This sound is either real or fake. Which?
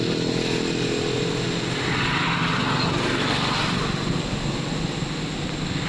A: real